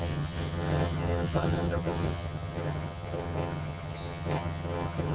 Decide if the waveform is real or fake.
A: fake